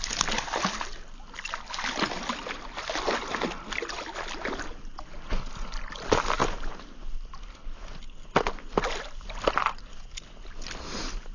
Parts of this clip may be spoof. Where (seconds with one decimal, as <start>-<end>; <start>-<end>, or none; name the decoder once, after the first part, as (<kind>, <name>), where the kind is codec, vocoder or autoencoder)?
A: none